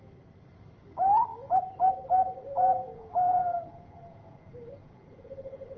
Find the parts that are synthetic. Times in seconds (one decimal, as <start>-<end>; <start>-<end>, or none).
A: 2.4-5.8